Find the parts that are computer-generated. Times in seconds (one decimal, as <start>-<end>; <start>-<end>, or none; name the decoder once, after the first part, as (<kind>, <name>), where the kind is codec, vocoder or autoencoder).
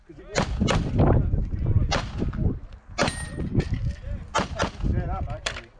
0.0-5.8 (vocoder, BigVGAN v2)